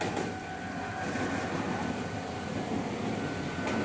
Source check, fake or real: real